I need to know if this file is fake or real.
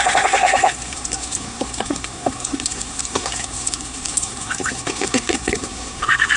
fake